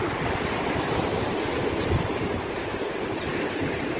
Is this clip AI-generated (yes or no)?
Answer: no